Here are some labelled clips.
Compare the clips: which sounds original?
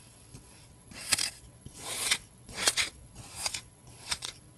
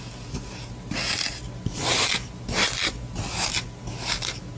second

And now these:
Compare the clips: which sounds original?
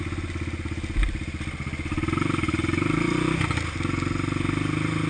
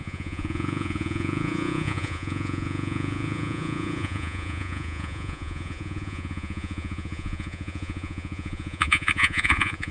first